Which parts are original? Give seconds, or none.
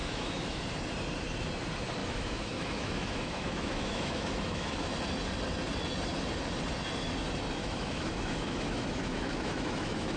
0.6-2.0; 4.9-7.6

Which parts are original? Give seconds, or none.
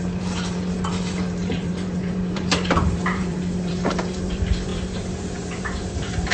none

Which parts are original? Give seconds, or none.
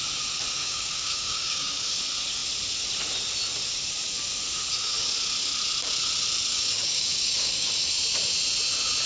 0.0-0.6; 2.0-6.5; 7.9-9.1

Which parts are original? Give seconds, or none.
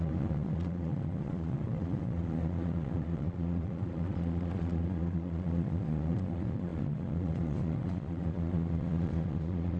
none